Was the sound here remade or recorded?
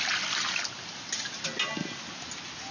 recorded